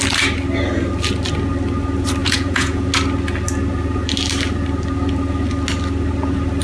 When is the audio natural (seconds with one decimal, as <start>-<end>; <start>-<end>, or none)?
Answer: 0.0-2.2; 2.9-6.6